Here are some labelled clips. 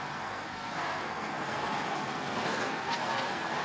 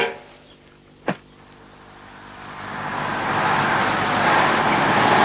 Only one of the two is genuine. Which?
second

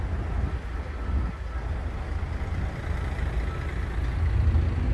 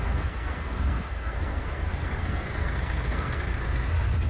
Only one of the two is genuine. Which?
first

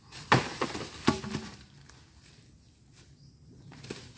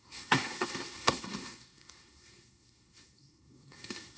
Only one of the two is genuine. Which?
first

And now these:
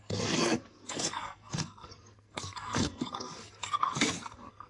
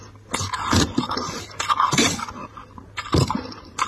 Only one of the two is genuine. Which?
second